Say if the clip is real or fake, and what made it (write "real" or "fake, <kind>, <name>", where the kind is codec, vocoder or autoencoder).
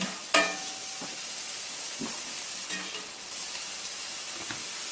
real